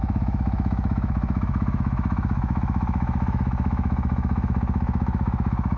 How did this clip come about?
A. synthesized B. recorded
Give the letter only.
A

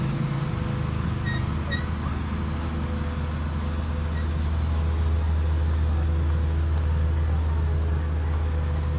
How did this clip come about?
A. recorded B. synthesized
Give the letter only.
A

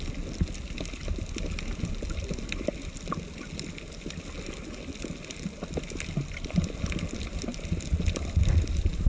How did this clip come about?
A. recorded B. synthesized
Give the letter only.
A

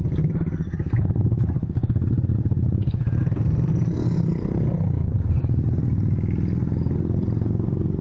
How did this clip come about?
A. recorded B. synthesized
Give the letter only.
A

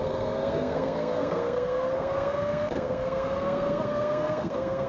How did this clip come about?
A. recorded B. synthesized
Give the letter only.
B